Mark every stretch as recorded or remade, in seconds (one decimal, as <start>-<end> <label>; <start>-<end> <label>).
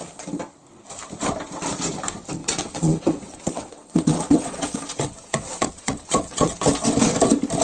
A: 0.0-2.4 recorded; 2.4-6.6 remade; 6.6-7.6 recorded